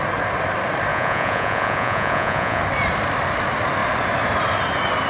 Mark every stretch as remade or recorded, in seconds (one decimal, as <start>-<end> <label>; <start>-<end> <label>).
0.0-0.9 recorded; 0.9-2.6 remade; 2.6-5.1 recorded